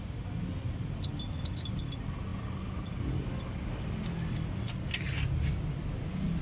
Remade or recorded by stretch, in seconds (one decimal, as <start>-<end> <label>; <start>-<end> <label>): 0.0-6.4 recorded